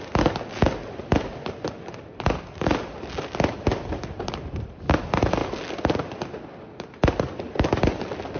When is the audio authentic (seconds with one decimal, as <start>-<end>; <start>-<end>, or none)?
0.0-8.4